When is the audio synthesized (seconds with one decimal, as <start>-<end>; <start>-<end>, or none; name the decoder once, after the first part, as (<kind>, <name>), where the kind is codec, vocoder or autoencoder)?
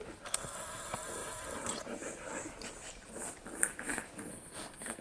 4.3-5.0 (codec, SNAC)